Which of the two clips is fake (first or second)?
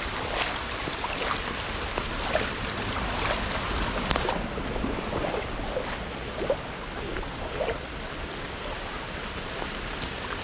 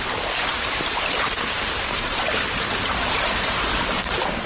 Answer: second